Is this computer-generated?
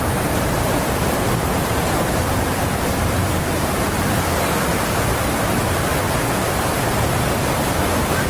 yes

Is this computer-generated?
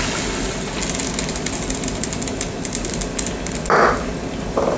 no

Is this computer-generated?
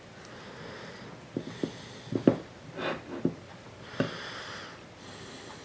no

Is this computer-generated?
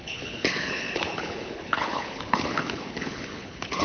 yes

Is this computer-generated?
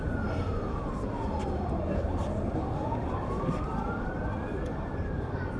no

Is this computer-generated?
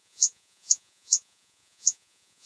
yes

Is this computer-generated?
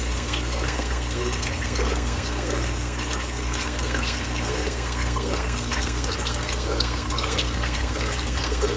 yes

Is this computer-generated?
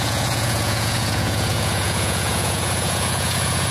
yes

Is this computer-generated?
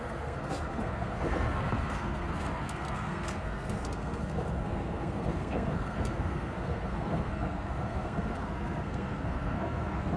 yes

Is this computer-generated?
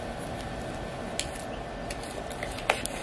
no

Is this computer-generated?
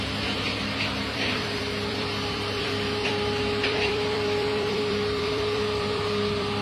yes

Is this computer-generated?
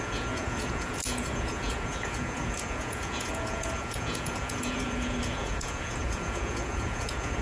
yes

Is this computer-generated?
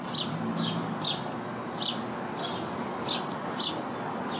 no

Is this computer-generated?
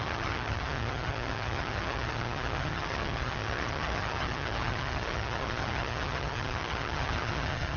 yes